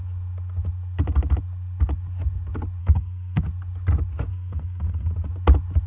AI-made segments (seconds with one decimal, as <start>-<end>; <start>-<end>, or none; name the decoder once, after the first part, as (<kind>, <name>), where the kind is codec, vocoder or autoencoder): 2.8-3.4 (codec, SNAC); 4.3-5.1